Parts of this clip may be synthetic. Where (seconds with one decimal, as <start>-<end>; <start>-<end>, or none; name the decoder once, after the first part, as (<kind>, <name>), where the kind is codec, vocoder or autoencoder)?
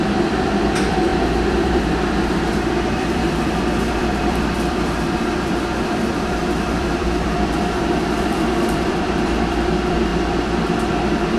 0.0-10.1 (vocoder, BigVGAN v2)